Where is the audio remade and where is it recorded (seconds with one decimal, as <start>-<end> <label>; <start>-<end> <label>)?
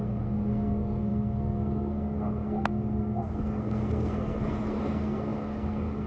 0.0-6.1 remade